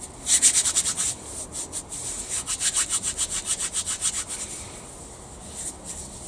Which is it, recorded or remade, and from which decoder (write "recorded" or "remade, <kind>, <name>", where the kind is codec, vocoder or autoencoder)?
recorded